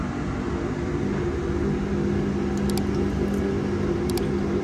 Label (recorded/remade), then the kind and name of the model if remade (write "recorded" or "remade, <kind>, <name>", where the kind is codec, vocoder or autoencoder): recorded